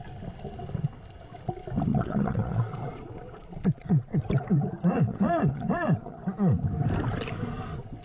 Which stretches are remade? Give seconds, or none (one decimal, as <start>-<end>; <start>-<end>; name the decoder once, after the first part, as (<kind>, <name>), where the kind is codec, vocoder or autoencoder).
1.9-4.2 (vocoder, Vocos); 4.9-6.2